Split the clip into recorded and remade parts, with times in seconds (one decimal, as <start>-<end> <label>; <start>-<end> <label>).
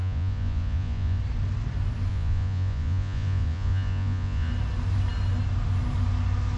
0.0-1.2 remade; 1.2-2.1 recorded; 2.1-4.5 remade; 4.5-6.6 recorded